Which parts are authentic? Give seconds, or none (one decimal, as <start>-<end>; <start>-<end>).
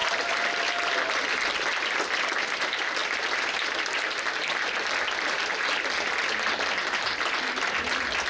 0.6-3.0; 5.6-8.3